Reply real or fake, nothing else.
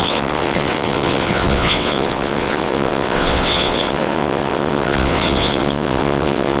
fake